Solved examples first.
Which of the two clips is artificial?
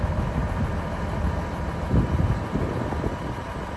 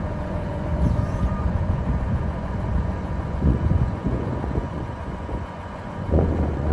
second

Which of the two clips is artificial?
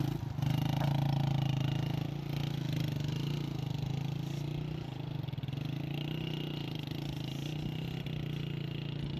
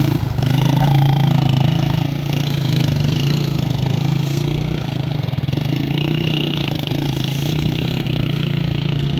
second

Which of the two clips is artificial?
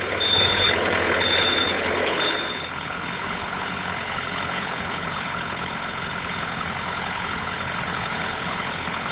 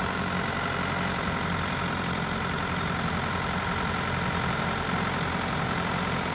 first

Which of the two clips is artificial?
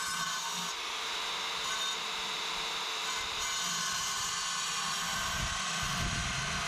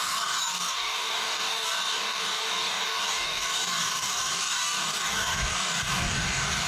second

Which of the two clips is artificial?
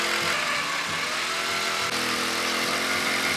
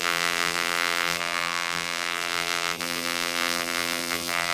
second